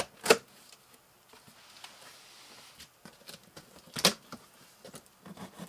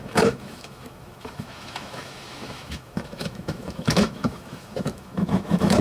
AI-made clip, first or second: second